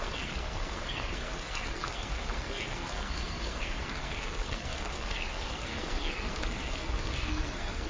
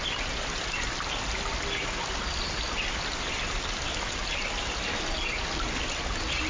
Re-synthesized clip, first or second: first